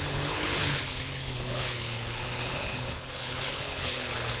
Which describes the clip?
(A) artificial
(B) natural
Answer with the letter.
A